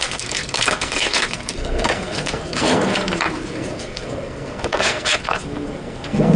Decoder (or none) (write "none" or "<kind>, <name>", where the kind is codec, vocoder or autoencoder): codec, SNAC